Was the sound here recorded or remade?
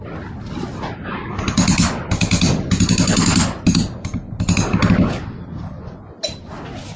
recorded